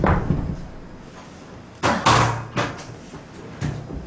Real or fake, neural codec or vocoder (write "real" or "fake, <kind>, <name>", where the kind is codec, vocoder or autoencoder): real